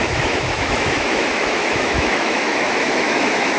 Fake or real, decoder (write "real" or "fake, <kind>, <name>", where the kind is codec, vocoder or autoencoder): fake, autoencoder, DAC-VAE